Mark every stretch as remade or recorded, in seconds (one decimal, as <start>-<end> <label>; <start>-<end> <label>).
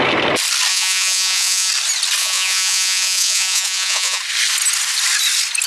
0.0-0.7 recorded; 0.7-1.7 remade; 1.7-2.2 recorded; 2.2-4.2 remade; 4.2-5.7 recorded